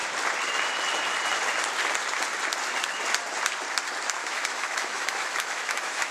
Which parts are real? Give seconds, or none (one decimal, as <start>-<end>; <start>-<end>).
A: 0.0-4.2